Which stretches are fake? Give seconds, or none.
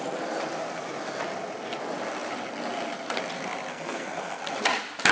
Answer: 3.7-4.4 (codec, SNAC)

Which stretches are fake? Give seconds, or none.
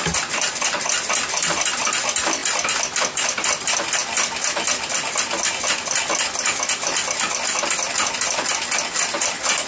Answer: none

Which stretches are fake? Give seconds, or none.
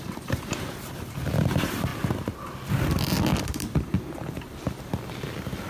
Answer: 0.0-1.9 (vocoder, BigVGAN v2); 2.7-5.7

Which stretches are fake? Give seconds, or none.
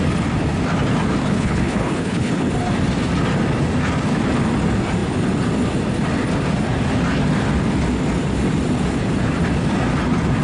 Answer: 1.2-2.5 (codec, HILCodec)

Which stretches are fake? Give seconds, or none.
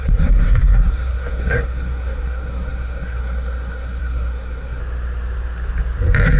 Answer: 0.0-4.8 (codec, SNAC)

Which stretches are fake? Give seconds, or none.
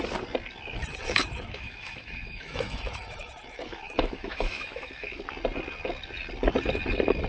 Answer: 0.8-5.2 (autoencoder, DAC-VAE)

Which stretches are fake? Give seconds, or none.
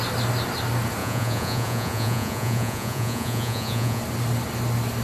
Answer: 1.0-4.0 (vocoder, Vocos)